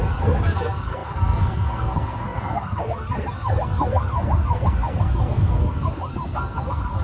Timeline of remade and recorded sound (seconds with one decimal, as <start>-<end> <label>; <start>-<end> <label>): 0.0-7.0 remade